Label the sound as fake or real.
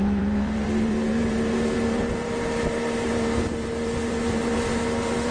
fake